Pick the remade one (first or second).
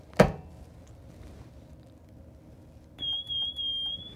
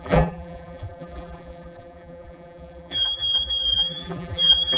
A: second